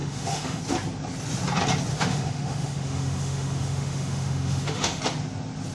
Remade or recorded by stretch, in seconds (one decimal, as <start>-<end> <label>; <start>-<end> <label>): 0.0-0.6 remade; 0.6-1.9 recorded; 1.9-5.0 remade; 5.0-5.7 recorded